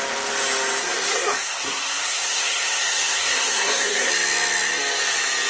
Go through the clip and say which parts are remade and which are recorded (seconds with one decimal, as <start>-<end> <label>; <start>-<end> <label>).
0.0-0.8 recorded; 0.8-4.1 remade; 4.1-5.5 recorded